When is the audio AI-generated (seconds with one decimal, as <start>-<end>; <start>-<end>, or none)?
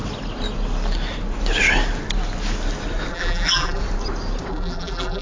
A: 3.1-3.8; 4.5-5.2